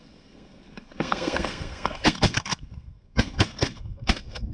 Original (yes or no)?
no